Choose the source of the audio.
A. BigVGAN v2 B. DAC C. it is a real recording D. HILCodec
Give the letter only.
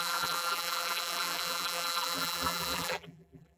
A